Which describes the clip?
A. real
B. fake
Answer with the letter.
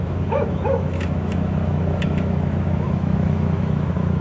B